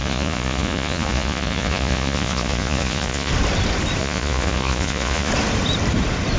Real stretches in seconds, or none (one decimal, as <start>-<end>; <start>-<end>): 3.3-4.0; 5.3-6.4